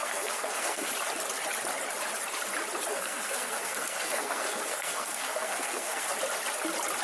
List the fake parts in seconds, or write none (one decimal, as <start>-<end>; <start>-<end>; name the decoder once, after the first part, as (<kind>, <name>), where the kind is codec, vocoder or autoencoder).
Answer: 0.0-0.9 (codec, SNAC); 2.9-6.1

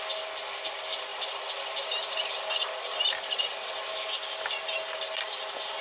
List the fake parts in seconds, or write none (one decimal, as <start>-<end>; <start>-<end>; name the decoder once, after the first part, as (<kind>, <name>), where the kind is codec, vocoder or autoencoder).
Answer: none

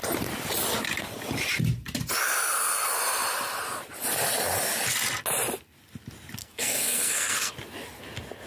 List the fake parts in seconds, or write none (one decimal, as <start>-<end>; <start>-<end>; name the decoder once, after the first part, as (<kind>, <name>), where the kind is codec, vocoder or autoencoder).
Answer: 6.4-7.5 (codec, SNAC)